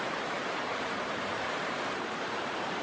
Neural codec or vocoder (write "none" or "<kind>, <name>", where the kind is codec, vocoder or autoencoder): vocoder, BigVGAN v2